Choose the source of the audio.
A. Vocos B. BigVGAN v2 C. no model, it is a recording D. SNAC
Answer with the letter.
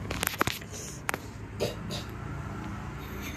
C